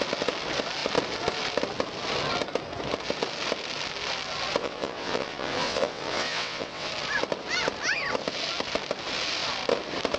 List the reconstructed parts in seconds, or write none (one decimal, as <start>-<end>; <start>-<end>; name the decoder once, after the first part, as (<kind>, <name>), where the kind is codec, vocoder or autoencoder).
4.6-6.9 (vocoder, WaveNeXt)

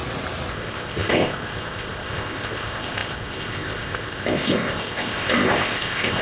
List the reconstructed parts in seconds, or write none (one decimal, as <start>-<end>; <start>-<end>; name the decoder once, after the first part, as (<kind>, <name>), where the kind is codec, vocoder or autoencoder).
0.5-6.2 (codec, ZipCodec)

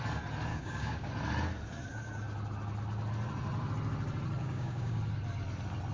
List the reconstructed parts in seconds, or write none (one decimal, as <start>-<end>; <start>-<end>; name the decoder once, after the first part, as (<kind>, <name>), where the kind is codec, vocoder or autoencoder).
0.5-1.1 (codec, DAC); 4.4-5.0

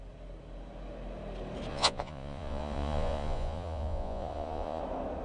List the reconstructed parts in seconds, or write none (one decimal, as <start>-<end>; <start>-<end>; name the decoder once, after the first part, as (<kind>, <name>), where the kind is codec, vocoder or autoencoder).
1.7-4.8 (vocoder, Vocos)

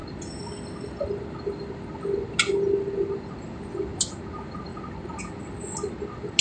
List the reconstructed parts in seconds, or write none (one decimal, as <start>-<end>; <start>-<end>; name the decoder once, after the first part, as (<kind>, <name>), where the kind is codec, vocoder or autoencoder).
none